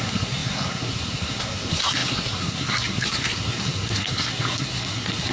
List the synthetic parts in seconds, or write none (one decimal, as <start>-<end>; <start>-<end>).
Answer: 0.0-5.3